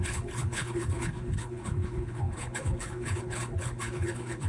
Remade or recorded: remade